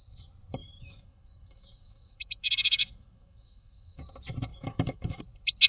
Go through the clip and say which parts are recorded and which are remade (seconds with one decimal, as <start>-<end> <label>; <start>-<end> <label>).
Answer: 0.0-0.6 recorded; 0.6-4.0 remade; 4.0-4.5 recorded; 4.5-5.2 remade; 5.2-5.7 recorded